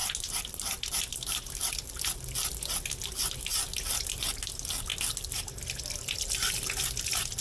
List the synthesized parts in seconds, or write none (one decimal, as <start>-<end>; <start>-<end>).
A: none